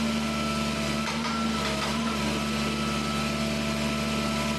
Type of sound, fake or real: real